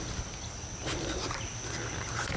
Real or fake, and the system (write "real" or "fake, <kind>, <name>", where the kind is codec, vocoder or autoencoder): real